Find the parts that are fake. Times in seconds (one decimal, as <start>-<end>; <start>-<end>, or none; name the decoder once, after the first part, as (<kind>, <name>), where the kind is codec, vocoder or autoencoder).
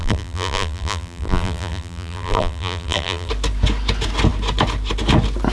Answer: 0.0-3.3 (vocoder, BigVGAN v2)